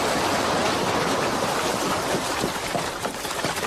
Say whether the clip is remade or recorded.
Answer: recorded